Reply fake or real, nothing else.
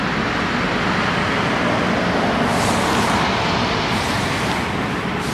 real